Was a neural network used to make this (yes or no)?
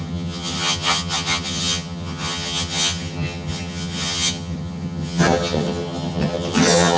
yes